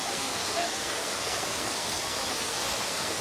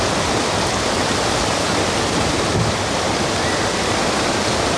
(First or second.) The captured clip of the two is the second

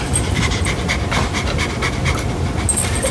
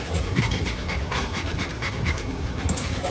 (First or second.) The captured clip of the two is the first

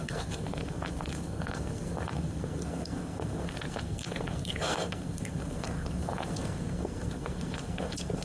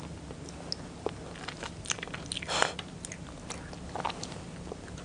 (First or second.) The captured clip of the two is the second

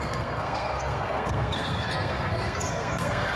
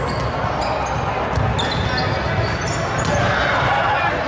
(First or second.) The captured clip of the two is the second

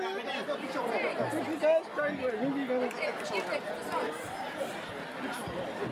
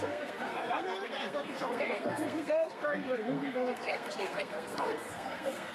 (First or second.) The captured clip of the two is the first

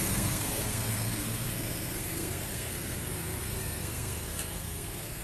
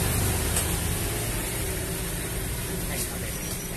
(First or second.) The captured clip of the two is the second